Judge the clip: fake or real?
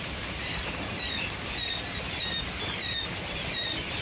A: fake